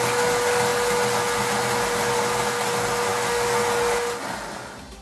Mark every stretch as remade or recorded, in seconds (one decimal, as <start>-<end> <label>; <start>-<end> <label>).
0.0-5.0 recorded